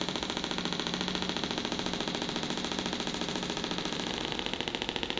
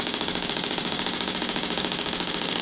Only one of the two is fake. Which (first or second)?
second